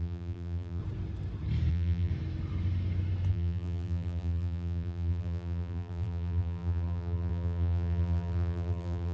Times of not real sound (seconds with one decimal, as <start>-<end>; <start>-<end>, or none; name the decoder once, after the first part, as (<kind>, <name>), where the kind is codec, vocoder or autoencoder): 0.0-0.8 (vocoder, BigVGAN v2); 1.7-2.1; 3.3-9.1